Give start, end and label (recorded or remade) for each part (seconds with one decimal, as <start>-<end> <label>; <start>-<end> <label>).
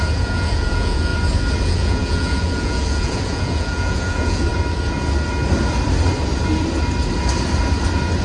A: 0.0-1.1 remade; 1.1-1.6 recorded; 1.6-4.5 remade; 4.5-8.2 recorded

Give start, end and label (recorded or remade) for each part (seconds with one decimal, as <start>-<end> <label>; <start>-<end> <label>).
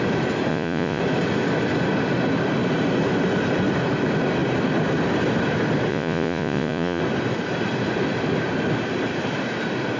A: 0.0-0.5 recorded; 0.5-1.0 remade; 1.0-5.9 recorded; 5.9-7.0 remade; 7.0-10.0 recorded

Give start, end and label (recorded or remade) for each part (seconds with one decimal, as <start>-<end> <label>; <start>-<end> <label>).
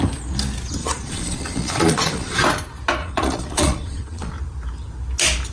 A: 0.0-0.8 recorded; 0.8-2.4 remade; 2.4-3.0 recorded; 3.0-4.3 remade; 4.3-5.5 recorded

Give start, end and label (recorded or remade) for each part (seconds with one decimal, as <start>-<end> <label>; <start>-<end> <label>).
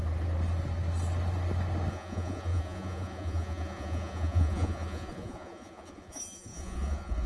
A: 0.0-1.9 recorded; 1.9-7.3 remade